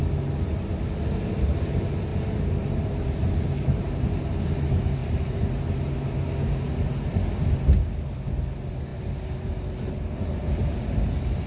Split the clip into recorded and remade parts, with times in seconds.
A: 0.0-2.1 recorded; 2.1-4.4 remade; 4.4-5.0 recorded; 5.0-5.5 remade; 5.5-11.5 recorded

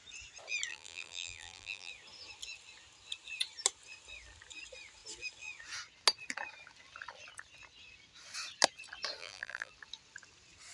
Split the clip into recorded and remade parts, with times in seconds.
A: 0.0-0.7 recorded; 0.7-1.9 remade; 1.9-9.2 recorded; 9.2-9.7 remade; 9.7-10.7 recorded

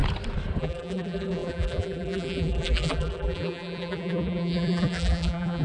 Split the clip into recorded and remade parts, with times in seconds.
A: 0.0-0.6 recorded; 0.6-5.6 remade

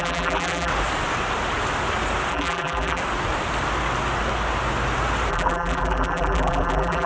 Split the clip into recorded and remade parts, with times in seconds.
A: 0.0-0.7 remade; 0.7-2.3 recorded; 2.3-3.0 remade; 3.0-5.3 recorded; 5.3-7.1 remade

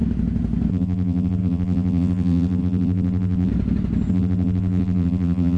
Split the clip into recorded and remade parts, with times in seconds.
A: 0.0-0.7 recorded; 0.7-3.5 remade; 3.5-4.1 recorded; 4.1-5.6 remade

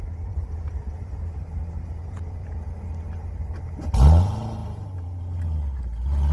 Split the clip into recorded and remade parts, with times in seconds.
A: 0.0-2.6 remade; 2.6-4.6 recorded; 4.6-5.2 remade; 5.2-6.3 recorded

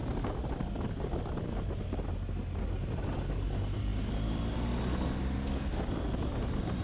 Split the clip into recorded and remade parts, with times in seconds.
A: 0.0-6.8 recorded